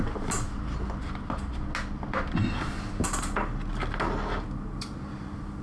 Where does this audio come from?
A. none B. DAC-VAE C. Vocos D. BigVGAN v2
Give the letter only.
A